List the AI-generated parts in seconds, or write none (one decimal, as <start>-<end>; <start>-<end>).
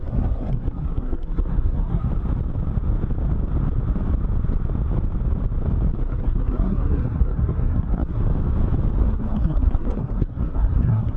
0.0-2.1; 6.0-8.2; 9.0-11.2